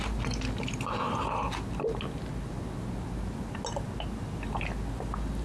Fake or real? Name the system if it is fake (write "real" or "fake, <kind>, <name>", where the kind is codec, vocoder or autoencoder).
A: real